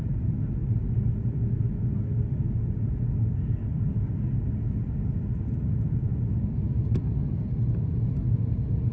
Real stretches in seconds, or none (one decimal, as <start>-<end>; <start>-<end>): 0.0-8.9